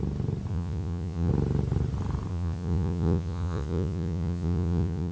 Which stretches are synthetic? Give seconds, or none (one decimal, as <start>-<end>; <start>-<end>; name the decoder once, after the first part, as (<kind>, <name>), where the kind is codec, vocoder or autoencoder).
0.5-1.3 (vocoder, Vocos); 2.3-5.1